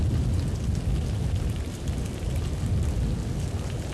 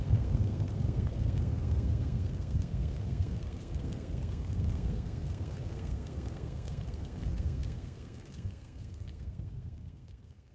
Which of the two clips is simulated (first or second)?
second